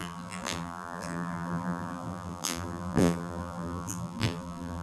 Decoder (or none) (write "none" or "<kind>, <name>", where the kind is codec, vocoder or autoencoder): vocoder, BigVGAN v2